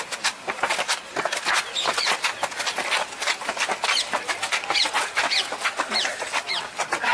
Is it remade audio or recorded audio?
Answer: recorded